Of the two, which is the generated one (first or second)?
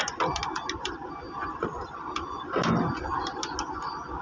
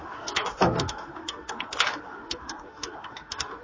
second